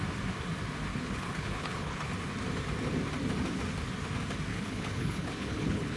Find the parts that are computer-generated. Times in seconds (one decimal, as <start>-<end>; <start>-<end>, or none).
0.9-2.1; 4.5-6.0